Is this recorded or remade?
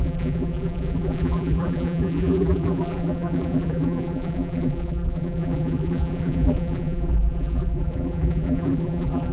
remade